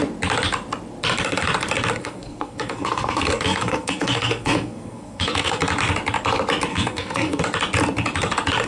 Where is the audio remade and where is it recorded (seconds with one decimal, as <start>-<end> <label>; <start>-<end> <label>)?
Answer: 0.0-2.0 recorded; 2.0-5.6 remade; 5.6-6.7 recorded; 6.7-7.4 remade; 7.4-8.7 recorded